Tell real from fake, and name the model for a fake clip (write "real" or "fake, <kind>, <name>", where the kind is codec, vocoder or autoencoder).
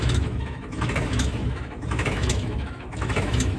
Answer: fake, autoencoder, DAC-VAE